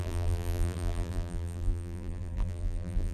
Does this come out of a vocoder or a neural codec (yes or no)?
yes